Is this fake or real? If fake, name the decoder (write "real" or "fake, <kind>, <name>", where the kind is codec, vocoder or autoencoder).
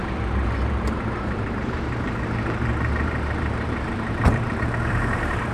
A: fake, vocoder, BigVGAN v2